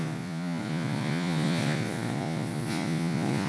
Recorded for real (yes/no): no